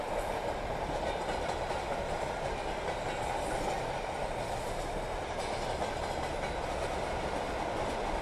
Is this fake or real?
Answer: real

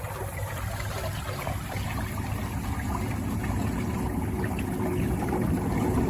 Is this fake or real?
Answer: real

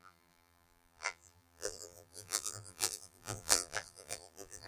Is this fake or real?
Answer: fake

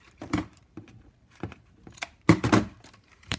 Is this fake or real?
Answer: fake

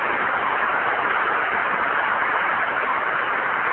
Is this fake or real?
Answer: real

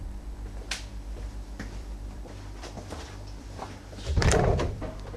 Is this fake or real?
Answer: fake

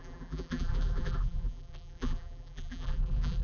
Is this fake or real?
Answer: fake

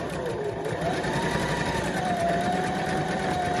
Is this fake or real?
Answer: fake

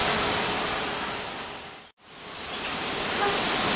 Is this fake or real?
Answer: fake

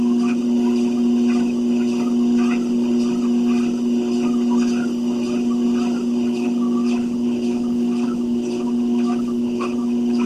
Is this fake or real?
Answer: real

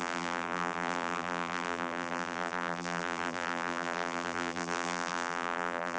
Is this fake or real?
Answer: fake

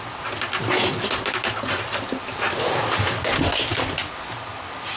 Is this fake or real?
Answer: real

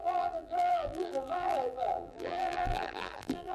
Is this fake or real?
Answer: fake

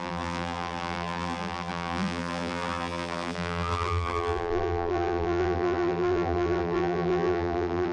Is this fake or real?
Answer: fake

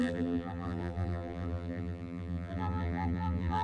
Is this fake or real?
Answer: fake